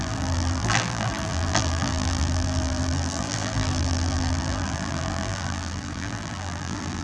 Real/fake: fake